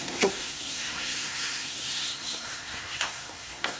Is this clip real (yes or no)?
no